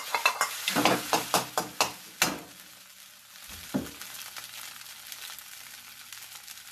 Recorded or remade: recorded